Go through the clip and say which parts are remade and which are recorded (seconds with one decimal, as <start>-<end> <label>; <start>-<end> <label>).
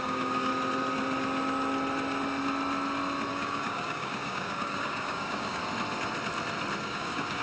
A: 0.0-0.5 remade; 0.5-3.3 recorded; 3.3-5.6 remade; 5.6-6.8 recorded; 6.8-7.4 remade